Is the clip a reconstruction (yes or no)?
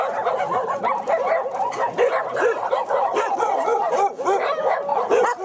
no